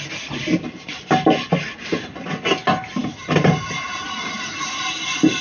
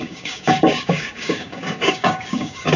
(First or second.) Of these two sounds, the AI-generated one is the second